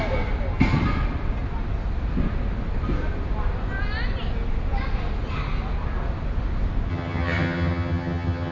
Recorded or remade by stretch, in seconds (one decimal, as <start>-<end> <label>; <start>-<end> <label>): 0.0-6.9 recorded; 6.9-8.5 remade